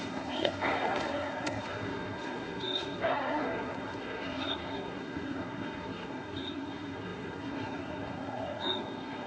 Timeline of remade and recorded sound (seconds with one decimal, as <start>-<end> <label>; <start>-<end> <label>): 0.0-9.3 remade